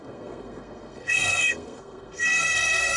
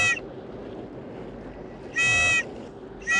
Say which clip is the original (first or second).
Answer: second